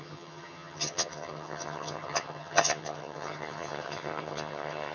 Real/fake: fake